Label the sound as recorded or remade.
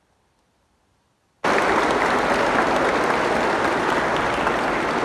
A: recorded